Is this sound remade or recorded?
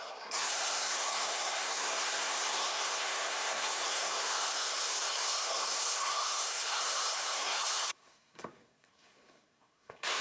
remade